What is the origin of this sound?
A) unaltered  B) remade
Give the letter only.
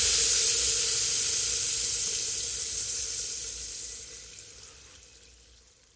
A